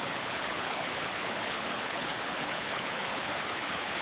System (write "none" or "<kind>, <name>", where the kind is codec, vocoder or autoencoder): codec, HILCodec